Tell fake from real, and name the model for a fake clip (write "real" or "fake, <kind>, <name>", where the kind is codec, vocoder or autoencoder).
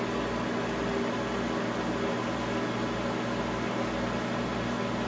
real